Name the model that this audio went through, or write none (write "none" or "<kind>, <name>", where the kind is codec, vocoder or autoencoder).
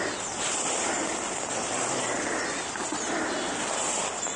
none